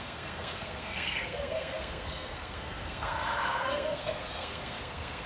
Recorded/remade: remade